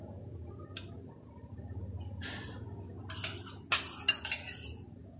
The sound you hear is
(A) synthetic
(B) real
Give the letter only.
B